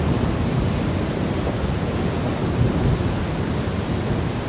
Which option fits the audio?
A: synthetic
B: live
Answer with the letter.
B